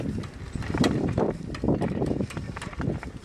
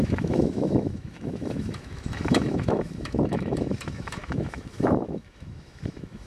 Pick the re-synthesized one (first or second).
second